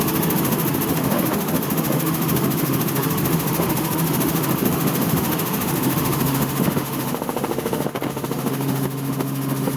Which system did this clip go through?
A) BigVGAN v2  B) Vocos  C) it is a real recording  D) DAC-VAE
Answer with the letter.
D